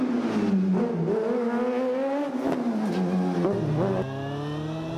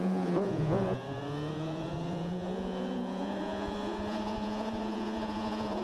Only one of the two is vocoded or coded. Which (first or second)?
second